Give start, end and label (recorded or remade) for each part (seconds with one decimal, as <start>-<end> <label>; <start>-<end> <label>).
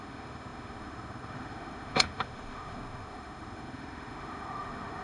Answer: 0.0-5.0 remade